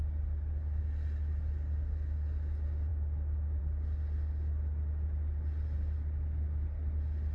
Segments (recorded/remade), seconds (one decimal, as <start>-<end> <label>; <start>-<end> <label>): 0.0-7.3 recorded